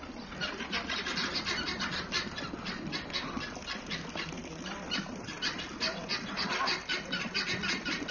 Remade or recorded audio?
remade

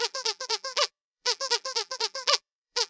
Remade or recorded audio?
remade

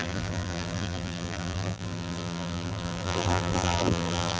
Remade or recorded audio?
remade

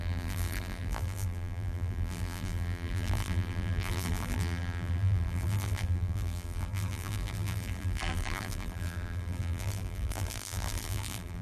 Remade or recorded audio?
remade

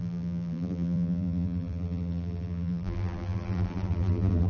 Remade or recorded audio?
remade